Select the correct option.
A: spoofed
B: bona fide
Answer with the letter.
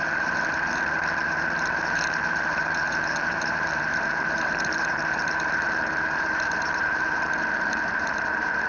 A